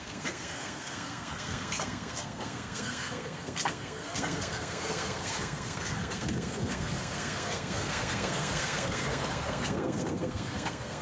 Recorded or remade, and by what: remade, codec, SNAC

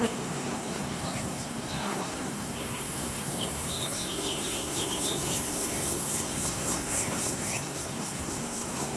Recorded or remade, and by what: remade, codec, SNAC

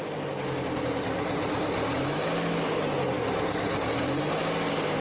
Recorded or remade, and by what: recorded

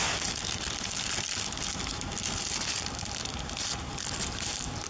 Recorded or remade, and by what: recorded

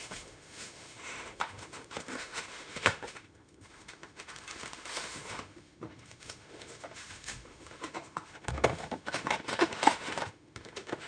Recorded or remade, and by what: remade, autoencoder, DAC-VAE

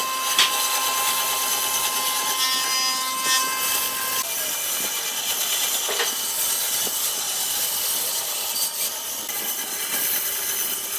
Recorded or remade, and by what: recorded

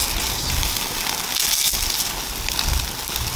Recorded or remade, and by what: recorded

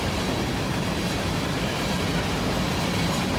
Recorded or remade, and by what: recorded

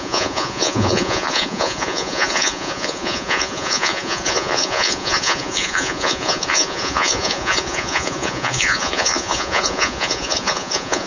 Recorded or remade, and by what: remade, vocoder, Vocos